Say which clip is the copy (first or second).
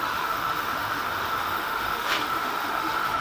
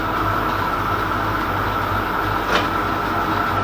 first